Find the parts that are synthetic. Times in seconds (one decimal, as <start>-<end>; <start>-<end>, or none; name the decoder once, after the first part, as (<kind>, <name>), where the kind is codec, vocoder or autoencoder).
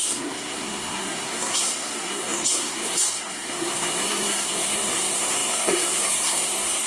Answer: 0.0-6.9 (codec, SNAC)